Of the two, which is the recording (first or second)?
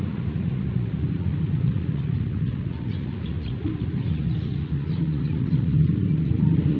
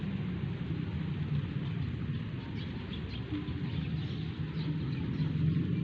second